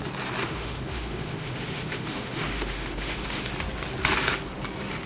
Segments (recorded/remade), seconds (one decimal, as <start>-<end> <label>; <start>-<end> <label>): 0.0-0.4 recorded; 0.4-3.5 remade; 3.5-5.1 recorded